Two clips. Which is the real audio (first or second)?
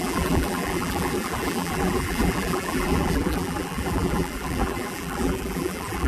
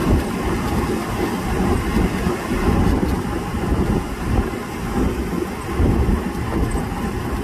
second